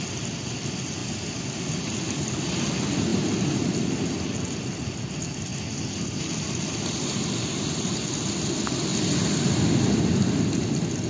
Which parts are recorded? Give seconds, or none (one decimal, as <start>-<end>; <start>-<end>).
0.0-11.1